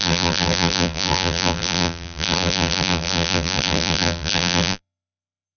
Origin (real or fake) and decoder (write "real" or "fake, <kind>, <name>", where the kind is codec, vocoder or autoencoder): fake, vocoder, BigVGAN v2